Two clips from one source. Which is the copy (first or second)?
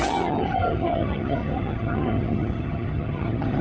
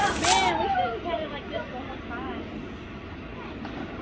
first